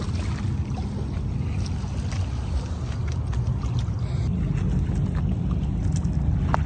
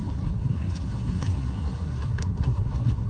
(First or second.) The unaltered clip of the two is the first